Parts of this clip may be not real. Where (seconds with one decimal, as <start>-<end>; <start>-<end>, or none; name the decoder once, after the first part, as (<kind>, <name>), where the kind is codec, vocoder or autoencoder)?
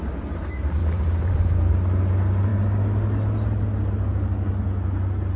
0.8-1.7 (vocoder, BigVGAN v2)